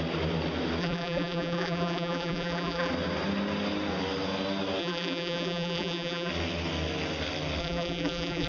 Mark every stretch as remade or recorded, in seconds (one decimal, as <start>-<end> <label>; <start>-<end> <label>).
0.0-0.8 recorded; 0.8-2.9 remade; 2.9-4.8 recorded; 4.8-6.3 remade; 6.3-7.6 recorded; 7.6-8.5 remade